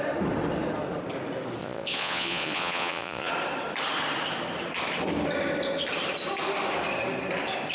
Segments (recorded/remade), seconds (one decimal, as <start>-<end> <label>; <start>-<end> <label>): 0.0-1.6 recorded; 1.6-3.3 remade; 3.3-7.7 recorded